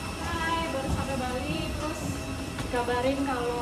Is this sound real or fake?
real